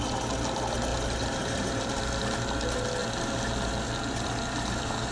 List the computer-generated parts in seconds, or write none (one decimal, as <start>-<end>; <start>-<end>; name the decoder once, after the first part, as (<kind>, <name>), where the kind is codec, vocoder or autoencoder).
0.9-2.0 (vocoder, BigVGAN v2)